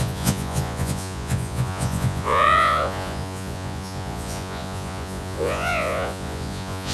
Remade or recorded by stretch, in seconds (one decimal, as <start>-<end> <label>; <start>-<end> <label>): 0.0-6.9 remade